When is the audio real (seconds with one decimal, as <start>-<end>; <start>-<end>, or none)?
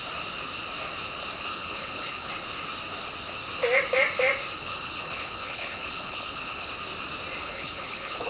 0.0-1.5; 2.3-4.6; 6.7-7.4